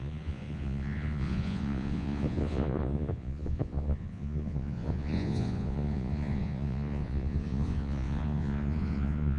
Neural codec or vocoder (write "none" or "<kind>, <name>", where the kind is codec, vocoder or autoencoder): vocoder, Vocos